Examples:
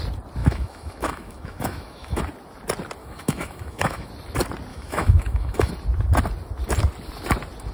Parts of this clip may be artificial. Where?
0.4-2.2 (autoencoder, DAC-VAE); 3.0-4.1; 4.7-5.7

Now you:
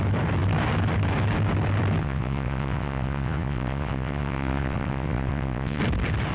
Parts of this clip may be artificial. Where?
2.0-5.8 (vocoder, WaveNeXt)

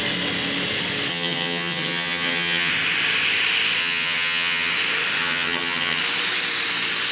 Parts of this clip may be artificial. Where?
1.1-2.7 (vocoder, HiFi-GAN); 3.8-4.7; 5.2-6.0

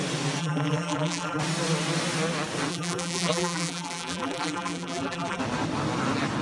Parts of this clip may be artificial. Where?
0.4-1.4 (vocoder, BigVGAN v2); 2.7-5.4

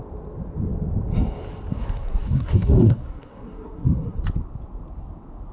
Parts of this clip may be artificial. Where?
1.7-4.2 (codec, SNAC)

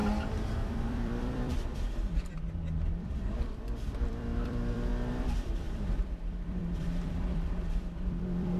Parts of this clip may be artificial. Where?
0.0-8.6 (vocoder, BigVGAN v2)